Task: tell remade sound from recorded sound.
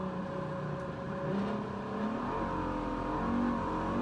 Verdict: recorded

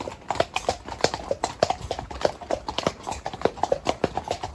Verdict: recorded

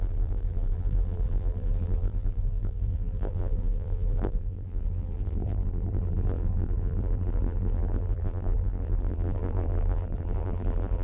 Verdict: remade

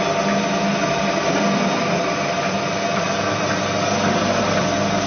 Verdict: recorded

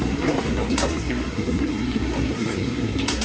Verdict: remade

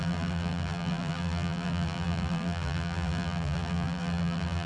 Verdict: remade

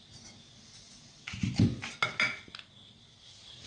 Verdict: recorded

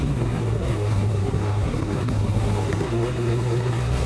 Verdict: remade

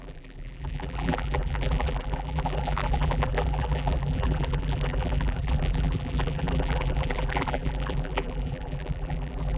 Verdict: remade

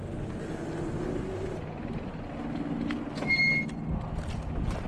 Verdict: recorded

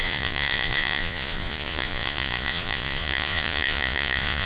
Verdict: remade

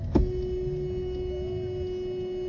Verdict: recorded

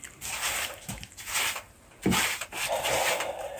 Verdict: recorded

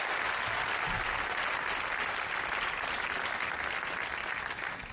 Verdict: recorded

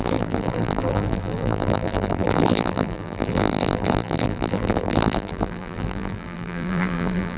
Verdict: remade